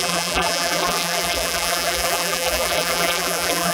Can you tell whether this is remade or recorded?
remade